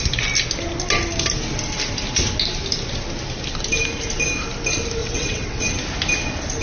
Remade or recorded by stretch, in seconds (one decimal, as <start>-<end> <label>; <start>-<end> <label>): 0.0-5.0 recorded; 5.0-5.7 remade; 5.7-6.6 recorded